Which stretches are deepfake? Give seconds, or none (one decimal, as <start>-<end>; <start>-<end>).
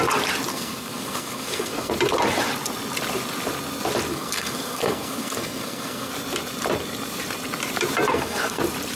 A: 0.5-1.9; 4.1-6.1; 8.1-8.6